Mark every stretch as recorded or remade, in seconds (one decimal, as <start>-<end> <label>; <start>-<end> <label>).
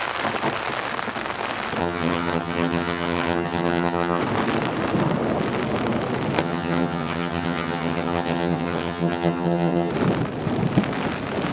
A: 0.0-1.8 recorded; 1.8-4.2 remade; 4.2-6.4 recorded; 6.4-9.9 remade; 9.9-11.5 recorded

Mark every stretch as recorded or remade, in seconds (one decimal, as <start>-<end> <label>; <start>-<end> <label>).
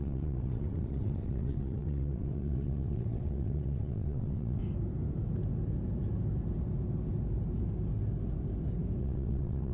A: 0.0-4.6 remade; 4.6-9.0 recorded; 9.0-9.7 remade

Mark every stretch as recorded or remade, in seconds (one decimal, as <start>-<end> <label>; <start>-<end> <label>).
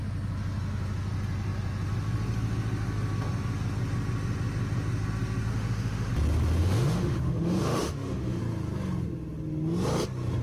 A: 0.0-5.5 recorded; 5.5-6.1 remade; 6.1-6.6 recorded; 6.6-8.4 remade; 8.4-10.4 recorded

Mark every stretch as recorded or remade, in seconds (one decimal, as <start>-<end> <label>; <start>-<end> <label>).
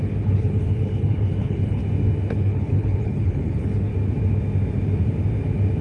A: 0.0-1.8 remade; 1.8-2.3 recorded; 2.3-3.9 remade; 3.9-5.8 recorded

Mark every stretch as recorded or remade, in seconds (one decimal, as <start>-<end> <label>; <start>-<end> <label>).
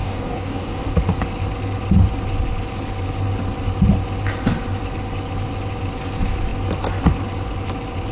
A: 0.0-0.9 remade; 0.9-8.1 recorded